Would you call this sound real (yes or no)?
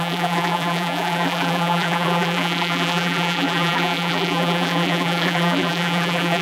no